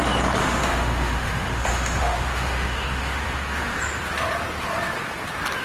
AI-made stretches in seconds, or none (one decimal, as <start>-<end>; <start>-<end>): 0.4-3.8